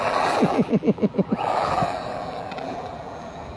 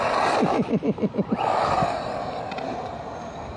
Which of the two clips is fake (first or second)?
first